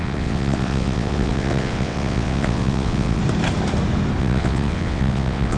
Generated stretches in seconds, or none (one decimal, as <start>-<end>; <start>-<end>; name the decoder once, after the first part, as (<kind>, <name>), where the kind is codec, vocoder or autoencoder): 0.0-3.2 (vocoder, WaveNeXt); 4.2-5.6